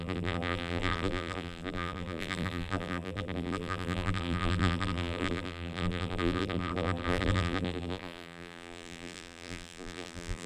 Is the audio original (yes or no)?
no